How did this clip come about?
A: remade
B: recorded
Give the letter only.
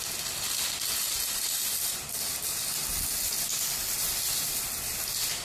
B